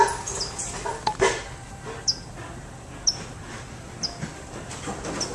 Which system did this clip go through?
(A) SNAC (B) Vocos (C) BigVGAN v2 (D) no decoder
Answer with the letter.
D